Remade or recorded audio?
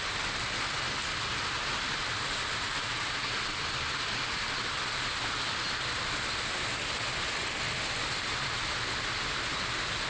recorded